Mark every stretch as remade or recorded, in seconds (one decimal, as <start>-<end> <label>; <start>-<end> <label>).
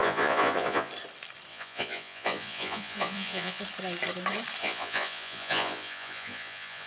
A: 0.0-0.9 remade; 0.9-1.5 recorded; 1.5-3.6 remade; 3.6-4.6 recorded; 4.6-6.9 remade